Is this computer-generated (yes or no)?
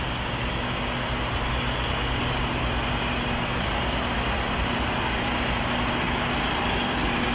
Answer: no